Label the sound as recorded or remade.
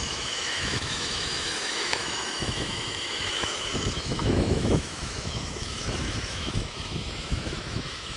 remade